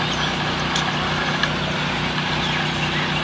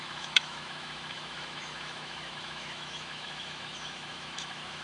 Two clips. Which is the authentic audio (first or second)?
first